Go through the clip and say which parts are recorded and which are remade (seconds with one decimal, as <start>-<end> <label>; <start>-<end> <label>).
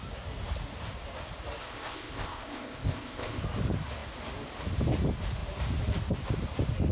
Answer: 0.0-1.6 recorded; 1.6-3.4 remade; 3.4-6.9 recorded